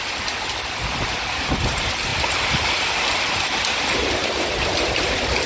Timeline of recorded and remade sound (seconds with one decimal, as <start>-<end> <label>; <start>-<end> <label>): 0.0-5.5 recorded